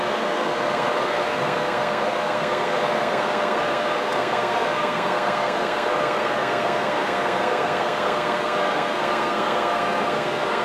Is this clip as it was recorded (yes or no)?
no